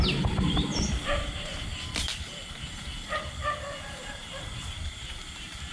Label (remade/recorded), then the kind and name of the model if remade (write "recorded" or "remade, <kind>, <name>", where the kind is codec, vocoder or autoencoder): recorded